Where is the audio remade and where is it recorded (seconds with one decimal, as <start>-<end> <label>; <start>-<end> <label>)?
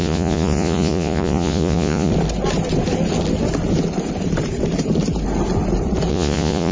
0.0-2.1 remade; 2.1-6.1 recorded; 6.1-6.7 remade